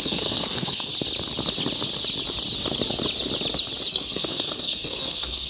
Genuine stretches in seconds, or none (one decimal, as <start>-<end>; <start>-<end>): 0.9-3.9